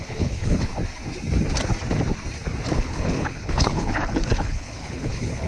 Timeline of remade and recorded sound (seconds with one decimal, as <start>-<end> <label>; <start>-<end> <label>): 0.0-0.7 remade; 0.7-2.7 recorded; 2.7-5.5 remade